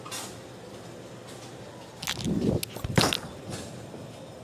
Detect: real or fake real